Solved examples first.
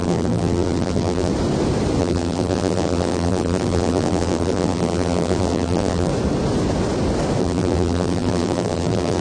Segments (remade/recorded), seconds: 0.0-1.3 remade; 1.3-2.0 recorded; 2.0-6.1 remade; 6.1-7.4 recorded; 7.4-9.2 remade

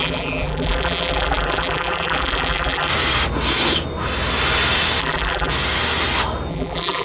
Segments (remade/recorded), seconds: 0.0-2.9 remade; 2.9-5.0 recorded; 5.0-5.5 remade; 5.5-6.5 recorded; 6.5-7.0 remade

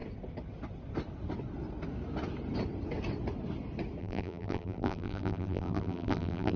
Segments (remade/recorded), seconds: 0.0-4.0 recorded; 4.0-6.6 remade

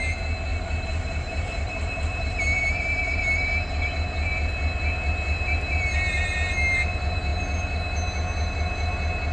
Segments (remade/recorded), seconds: 0.0-0.5 recorded; 0.5-3.2 remade; 3.2-9.3 recorded

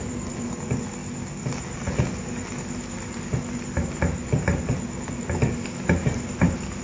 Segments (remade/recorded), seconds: 0.0-5.6 recorded; 5.6-6.8 remade

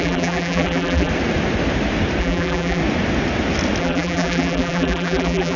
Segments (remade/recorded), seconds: 0.0-1.1 remade; 1.1-2.2 recorded; 2.2-2.8 remade; 2.8-3.8 recorded; 3.8-5.6 remade

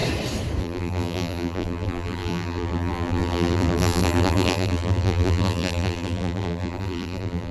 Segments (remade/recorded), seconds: 0.0-0.6 recorded; 0.6-7.5 remade